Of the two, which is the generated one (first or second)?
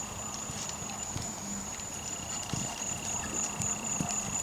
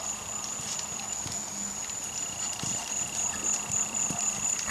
first